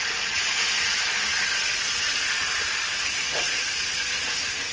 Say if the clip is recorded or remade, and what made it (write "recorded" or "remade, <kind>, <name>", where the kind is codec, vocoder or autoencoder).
recorded